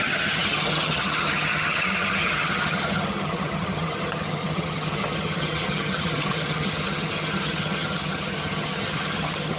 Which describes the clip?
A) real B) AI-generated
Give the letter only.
B